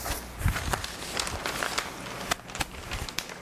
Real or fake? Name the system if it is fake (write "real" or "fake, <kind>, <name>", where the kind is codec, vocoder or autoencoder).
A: real